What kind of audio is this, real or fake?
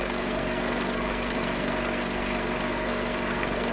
fake